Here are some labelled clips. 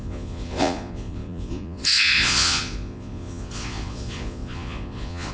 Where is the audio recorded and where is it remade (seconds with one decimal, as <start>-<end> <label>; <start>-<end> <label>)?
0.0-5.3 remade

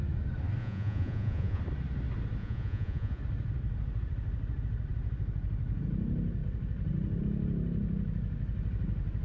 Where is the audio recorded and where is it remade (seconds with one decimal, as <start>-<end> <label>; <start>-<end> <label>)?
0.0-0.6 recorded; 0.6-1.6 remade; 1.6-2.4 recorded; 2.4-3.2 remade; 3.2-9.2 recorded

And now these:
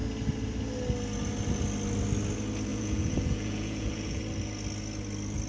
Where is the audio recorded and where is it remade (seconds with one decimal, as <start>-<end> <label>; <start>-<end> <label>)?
0.0-2.7 recorded; 2.7-4.2 remade; 4.2-5.5 recorded